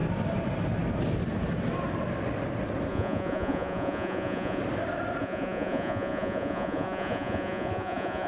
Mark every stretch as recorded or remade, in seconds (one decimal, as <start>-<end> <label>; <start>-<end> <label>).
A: 0.0-2.9 recorded; 2.9-4.6 remade; 4.6-5.2 recorded; 5.2-8.3 remade